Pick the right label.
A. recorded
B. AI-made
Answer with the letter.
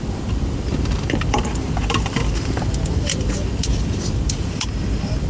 B